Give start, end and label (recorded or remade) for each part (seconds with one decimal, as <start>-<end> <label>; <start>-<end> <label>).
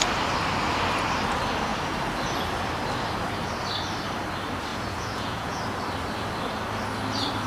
0.0-4.7 recorded; 4.7-5.6 remade; 5.6-7.5 recorded